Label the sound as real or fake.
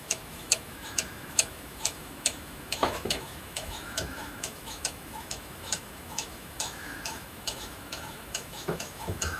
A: fake